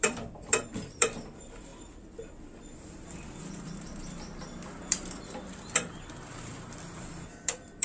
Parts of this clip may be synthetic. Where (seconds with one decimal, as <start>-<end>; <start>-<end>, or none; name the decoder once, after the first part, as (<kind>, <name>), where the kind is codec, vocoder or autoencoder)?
0.0-1.7 (vocoder, BigVGAN v2); 3.4-7.8